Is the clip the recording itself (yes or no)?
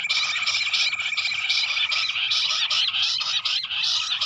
yes